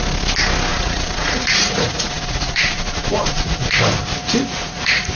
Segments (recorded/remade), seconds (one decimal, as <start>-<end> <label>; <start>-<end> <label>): 0.0-0.7 recorded; 0.7-3.8 remade; 3.8-4.6 recorded; 4.6-5.1 remade

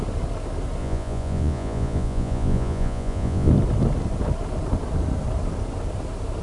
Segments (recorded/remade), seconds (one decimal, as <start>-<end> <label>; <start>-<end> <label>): 0.0-0.8 recorded; 0.8-3.5 remade; 3.5-6.4 recorded